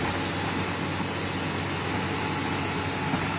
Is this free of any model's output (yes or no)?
yes